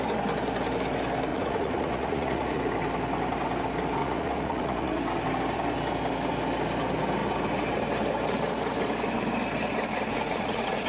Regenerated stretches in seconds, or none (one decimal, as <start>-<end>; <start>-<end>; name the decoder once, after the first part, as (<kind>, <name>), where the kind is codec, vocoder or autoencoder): 1.3-2.6 (vocoder, Vocos); 4.0-5.0; 10.1-10.9